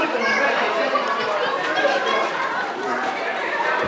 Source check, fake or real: fake